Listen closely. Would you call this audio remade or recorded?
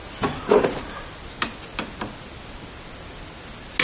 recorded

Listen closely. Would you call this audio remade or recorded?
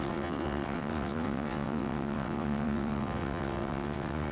remade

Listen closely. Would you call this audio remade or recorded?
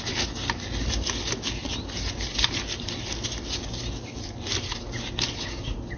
recorded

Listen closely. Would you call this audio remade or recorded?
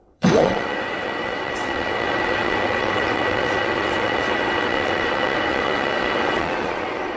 remade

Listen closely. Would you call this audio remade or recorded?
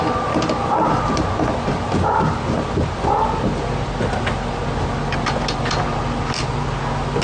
recorded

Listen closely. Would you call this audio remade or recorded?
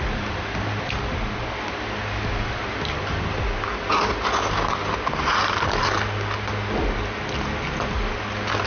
recorded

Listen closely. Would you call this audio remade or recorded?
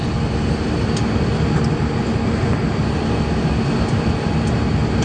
recorded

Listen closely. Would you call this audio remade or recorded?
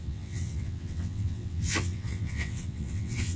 remade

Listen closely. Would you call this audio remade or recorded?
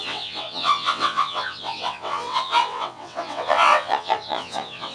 remade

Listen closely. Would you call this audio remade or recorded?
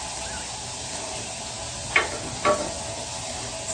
recorded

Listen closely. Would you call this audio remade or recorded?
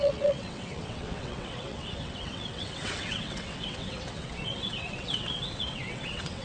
remade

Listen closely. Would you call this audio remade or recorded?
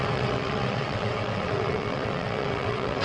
remade